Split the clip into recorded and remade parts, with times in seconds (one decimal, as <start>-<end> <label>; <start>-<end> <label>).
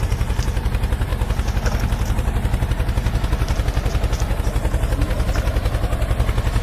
0.0-6.6 recorded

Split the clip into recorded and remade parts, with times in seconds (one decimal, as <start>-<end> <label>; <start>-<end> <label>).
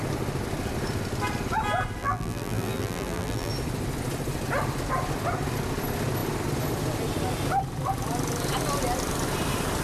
0.0-2.0 recorded; 2.0-3.5 remade; 3.5-9.8 recorded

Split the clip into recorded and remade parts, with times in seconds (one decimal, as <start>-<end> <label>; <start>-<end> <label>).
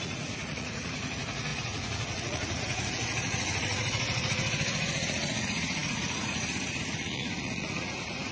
0.0-8.3 remade